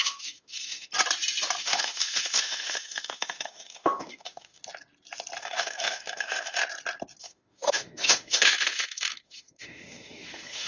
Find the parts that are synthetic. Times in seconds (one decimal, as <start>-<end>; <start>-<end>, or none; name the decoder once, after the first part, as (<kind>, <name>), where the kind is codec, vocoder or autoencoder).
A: 0.0-0.9 (autoencoder, DAC-VAE); 1.6-4.6; 5.4-6.6; 7.2-10.7